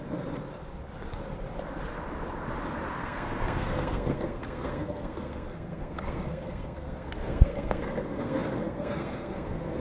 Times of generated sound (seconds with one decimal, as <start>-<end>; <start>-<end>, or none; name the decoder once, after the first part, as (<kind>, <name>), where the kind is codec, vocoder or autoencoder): 3.0-9.8 (codec, SNAC)